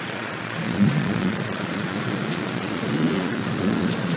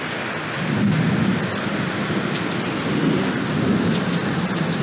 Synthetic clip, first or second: first